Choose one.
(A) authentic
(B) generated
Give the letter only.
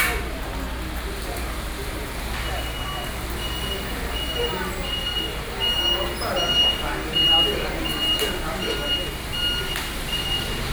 A